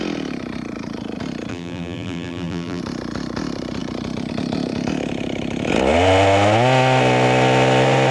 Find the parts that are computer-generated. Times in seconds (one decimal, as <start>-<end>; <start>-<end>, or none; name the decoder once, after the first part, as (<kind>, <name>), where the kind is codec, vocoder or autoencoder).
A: 1.5-2.8 (vocoder, BigVGAN v2)